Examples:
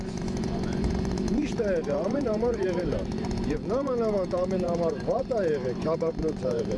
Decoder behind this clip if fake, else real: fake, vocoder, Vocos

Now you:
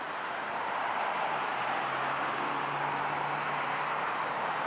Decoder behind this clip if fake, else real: real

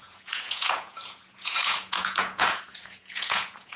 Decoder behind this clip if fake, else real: fake, vocoder, Vocos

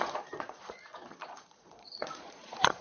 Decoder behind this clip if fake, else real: fake, vocoder, Vocos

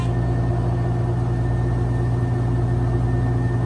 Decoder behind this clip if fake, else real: real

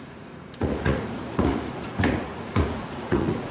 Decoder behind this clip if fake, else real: fake, vocoder, Vocos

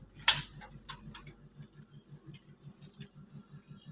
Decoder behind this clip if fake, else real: real